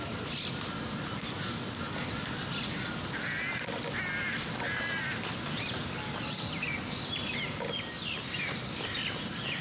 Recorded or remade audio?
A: recorded